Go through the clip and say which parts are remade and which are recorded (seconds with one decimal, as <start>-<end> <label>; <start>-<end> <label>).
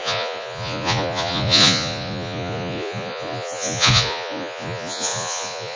0.0-5.8 remade